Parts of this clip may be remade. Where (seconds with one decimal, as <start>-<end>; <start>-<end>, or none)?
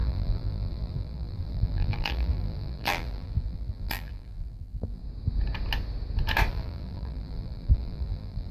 0.0-5.0; 6.5-8.5